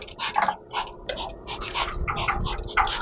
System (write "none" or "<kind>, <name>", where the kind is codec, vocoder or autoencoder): none